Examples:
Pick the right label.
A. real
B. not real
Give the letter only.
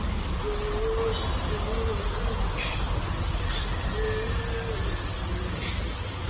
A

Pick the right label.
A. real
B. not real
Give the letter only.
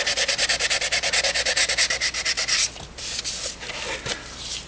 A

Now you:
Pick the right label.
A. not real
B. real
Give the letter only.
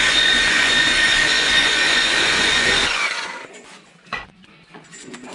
A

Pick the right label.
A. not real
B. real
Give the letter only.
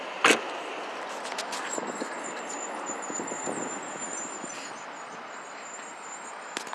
B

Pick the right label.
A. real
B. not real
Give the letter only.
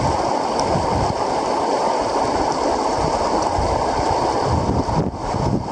A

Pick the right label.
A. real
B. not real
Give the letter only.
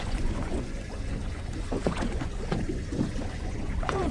B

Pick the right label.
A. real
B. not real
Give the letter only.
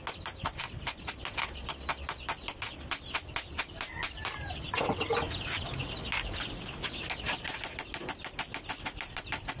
A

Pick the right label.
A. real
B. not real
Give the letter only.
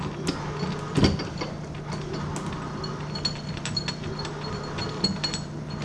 A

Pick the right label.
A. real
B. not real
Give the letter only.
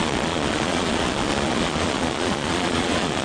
B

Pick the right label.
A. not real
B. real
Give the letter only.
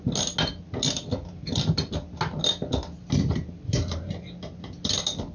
B